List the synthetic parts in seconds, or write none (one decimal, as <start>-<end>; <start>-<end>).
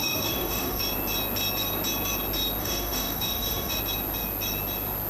0.0-0.8; 2.6-3.8